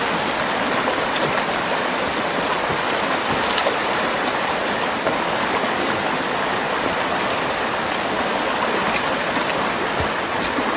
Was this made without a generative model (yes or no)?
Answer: yes